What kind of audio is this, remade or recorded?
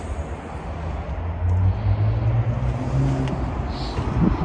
recorded